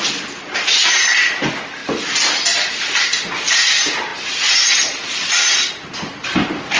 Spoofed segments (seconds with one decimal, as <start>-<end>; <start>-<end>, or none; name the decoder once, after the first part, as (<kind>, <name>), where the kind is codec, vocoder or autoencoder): none